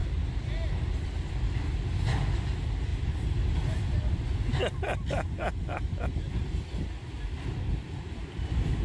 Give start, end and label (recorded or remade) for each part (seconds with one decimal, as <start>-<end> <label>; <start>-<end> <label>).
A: 0.0-8.8 recorded

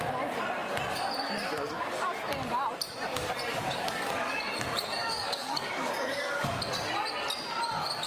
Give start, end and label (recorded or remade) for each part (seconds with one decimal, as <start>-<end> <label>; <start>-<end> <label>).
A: 0.0-3.5 recorded; 3.5-4.4 remade; 4.4-5.0 recorded; 5.0-6.6 remade; 6.6-8.1 recorded

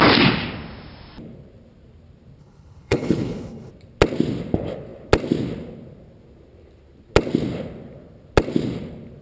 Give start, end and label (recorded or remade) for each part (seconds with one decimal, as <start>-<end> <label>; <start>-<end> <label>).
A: 0.0-2.4 recorded; 2.4-3.7 remade; 3.7-9.2 recorded

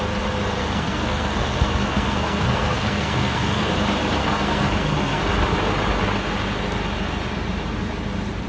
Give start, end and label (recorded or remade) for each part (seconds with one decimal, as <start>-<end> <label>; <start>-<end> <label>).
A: 0.0-0.6 recorded; 0.6-3.7 remade; 3.7-4.2 recorded; 4.2-5.2 remade; 5.2-8.5 recorded

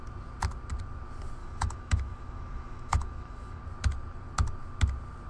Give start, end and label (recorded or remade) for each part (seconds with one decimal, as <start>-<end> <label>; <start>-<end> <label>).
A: 0.0-1.4 recorded; 1.4-3.6 remade; 3.6-5.3 recorded

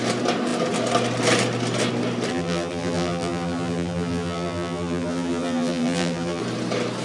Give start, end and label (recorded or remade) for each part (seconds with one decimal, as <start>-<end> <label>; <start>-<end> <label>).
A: 0.0-2.3 recorded; 2.3-6.4 remade; 6.4-7.0 recorded

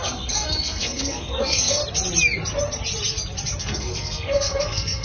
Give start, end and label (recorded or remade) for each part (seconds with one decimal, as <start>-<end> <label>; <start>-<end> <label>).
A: 0.0-1.8 remade; 1.8-3.6 recorded; 3.6-5.0 remade

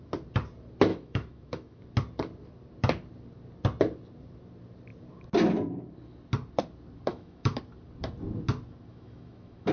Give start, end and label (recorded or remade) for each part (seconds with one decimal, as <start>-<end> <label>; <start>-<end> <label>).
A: 0.0-0.9 recorded; 0.9-1.8 remade; 1.8-7.1 recorded; 7.1-7.6 remade; 7.6-8.9 recorded; 8.9-9.7 remade